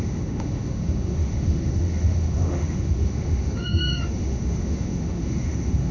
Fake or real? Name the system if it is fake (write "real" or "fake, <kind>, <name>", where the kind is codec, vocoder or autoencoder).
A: fake, autoencoder, DAC-VAE